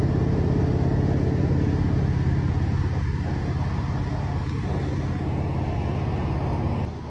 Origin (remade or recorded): recorded